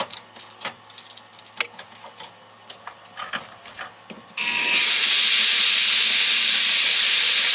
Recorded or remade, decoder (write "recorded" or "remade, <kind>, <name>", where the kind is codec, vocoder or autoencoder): recorded